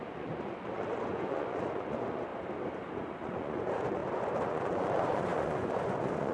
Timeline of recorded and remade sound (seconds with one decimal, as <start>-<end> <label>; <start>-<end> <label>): 0.0-2.3 remade; 2.3-3.0 recorded; 3.0-4.0 remade; 4.0-4.5 recorded; 4.5-6.3 remade